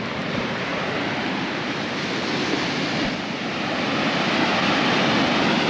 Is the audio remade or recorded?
recorded